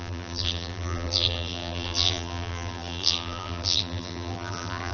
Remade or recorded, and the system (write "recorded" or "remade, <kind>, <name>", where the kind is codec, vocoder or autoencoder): remade, vocoder, BigVGAN v2